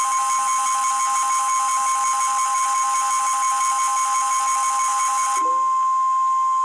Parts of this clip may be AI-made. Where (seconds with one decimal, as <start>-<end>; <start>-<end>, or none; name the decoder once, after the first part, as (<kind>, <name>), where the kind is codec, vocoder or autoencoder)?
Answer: none